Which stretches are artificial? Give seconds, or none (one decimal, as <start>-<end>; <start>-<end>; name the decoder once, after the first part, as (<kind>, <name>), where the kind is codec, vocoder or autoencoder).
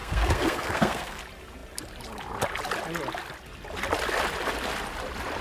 0.0-1.2 (codec, SNAC)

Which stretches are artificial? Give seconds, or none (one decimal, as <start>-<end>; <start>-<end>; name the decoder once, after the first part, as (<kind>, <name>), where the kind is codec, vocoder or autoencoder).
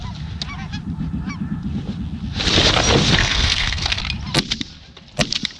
3.2-4.0 (codec, SNAC)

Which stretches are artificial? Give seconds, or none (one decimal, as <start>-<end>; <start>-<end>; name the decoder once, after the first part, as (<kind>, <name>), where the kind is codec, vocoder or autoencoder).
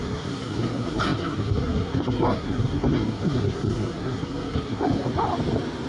0.0-5.1 (codec, SNAC)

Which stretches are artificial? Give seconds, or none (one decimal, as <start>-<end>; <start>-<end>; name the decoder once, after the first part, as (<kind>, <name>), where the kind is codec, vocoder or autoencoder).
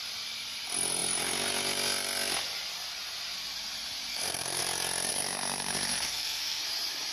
4.1-4.6 (codec, SNAC); 5.1-6.6